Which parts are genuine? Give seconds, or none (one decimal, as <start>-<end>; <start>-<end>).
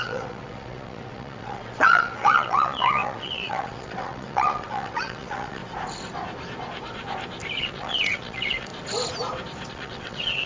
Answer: 5.6-7.6; 8.7-9.7